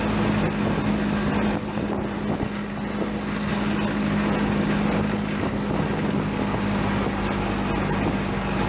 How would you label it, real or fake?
real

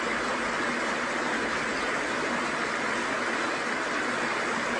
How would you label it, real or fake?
real